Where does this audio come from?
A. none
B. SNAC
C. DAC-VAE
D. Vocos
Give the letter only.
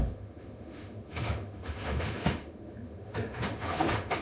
C